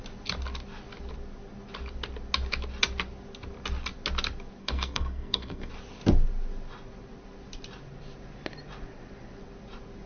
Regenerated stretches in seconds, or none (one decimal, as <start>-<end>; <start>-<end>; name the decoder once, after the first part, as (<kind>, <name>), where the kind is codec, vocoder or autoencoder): 4.6-5.7 (codec, SNAC)